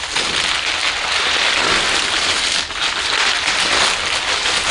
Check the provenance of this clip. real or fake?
real